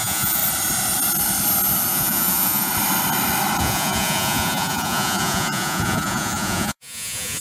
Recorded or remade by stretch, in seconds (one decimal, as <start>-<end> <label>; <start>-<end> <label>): 0.0-0.4 remade; 0.4-1.9 recorded; 1.9-2.7 remade; 2.7-3.6 recorded; 3.6-7.4 remade